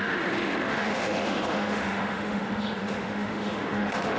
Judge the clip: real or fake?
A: fake